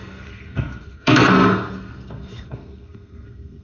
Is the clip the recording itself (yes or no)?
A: no